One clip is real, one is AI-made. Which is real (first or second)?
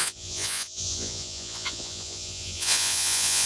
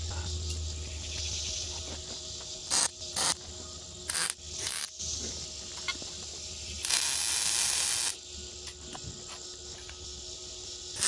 second